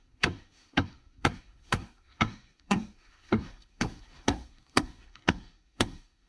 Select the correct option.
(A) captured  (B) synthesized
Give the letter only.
B